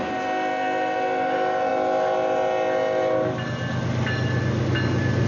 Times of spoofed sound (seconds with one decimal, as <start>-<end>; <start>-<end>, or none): none